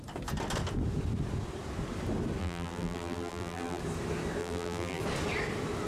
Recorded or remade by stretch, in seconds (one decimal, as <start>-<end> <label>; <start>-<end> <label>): 0.0-2.4 recorded; 2.4-3.8 remade; 3.8-4.4 recorded; 4.4-5.0 remade; 5.0-5.9 recorded